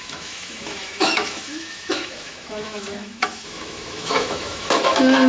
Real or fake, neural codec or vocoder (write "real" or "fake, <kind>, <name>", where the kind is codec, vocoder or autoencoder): fake, autoencoder, DAC-VAE